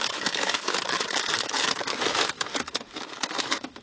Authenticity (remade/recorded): remade